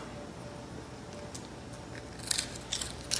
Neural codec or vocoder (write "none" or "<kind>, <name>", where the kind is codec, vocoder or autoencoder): none